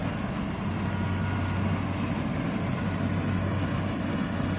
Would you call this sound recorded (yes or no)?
yes